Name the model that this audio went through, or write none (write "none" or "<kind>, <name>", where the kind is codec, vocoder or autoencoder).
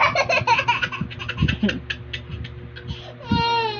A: none